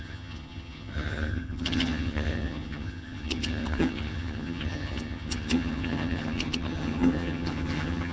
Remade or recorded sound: remade